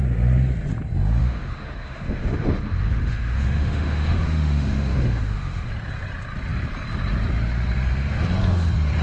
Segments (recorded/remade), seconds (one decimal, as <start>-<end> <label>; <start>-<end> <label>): 0.0-1.2 recorded; 1.2-5.7 remade; 5.7-9.0 recorded